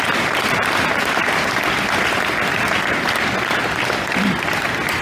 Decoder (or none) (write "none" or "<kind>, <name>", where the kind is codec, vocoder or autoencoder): none